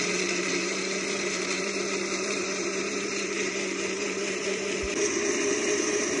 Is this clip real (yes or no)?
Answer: no